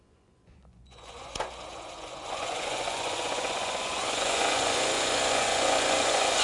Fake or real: fake